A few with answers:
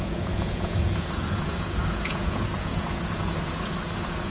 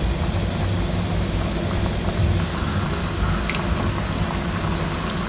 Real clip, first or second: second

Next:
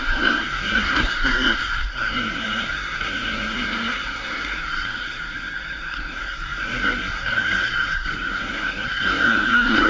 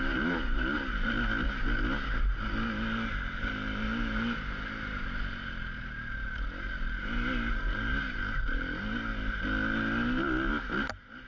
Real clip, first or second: second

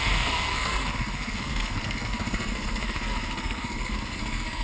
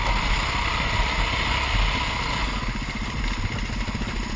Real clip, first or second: second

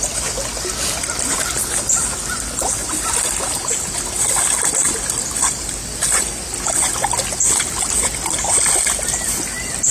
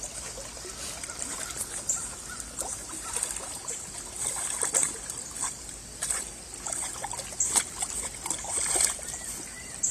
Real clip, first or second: first